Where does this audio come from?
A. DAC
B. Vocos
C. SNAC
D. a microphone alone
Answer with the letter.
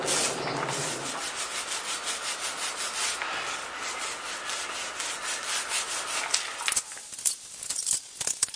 D